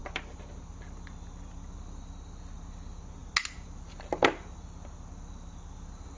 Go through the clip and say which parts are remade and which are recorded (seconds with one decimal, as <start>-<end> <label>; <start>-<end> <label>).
0.0-6.2 recorded